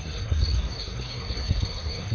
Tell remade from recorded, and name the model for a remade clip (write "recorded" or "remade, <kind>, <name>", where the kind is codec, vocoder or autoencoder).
remade, codec, SNAC